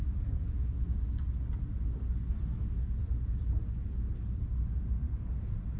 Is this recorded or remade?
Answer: recorded